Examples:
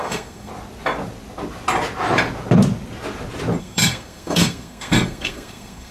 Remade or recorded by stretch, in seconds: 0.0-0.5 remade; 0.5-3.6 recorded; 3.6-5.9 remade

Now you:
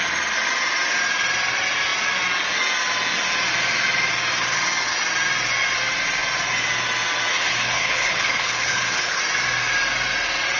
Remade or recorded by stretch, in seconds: 0.0-7.3 recorded; 7.3-9.2 remade; 9.2-10.6 recorded

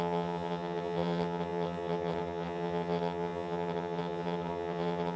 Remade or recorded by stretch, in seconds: 0.0-5.2 remade

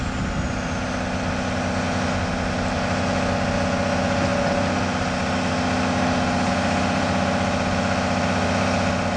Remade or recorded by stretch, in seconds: 0.0-9.2 recorded